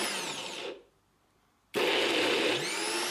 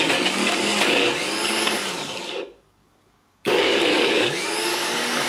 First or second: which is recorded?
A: first